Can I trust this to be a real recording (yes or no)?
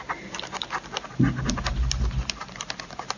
yes